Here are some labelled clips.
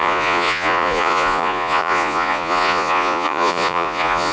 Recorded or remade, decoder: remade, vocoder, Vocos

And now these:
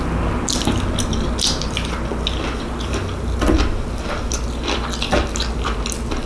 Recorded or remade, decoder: recorded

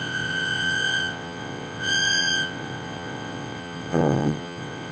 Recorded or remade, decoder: remade, vocoder, WaveNeXt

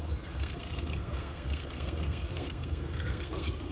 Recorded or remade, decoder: remade, codec, SNAC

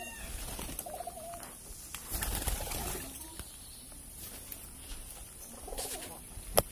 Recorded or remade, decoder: recorded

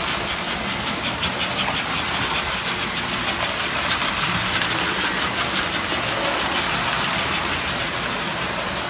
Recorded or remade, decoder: recorded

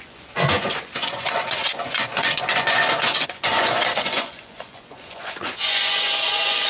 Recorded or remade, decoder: remade, vocoder, Vocos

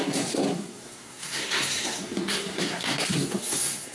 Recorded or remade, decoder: remade, codec, SNAC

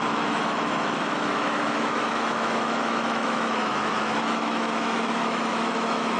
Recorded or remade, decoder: remade, autoencoder, DAC-VAE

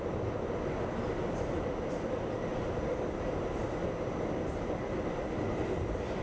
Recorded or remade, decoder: recorded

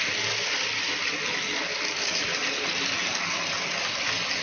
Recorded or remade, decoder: recorded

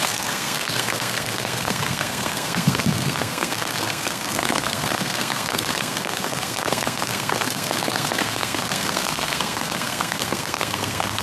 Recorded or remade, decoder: remade, codec, SNAC